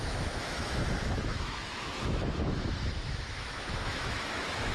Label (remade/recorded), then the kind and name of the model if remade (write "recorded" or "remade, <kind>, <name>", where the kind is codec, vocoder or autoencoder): remade, autoencoder, DAC-VAE